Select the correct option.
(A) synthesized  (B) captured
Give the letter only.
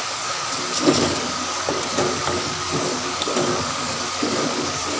A